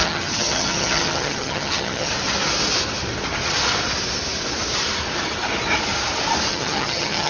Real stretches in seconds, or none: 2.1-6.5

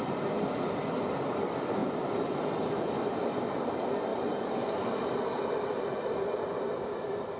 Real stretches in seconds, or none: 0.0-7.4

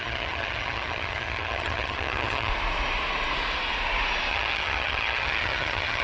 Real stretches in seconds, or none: 2.5-4.3

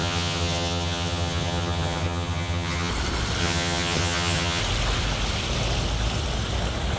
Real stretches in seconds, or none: 2.9-3.4; 4.6-7.0

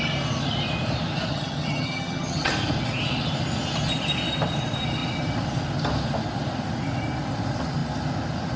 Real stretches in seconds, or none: 0.0-1.3; 2.5-8.6

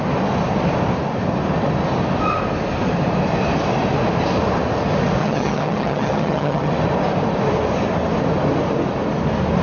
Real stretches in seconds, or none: 0.0-5.2; 6.7-9.6